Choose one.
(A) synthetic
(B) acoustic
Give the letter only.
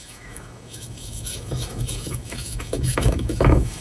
A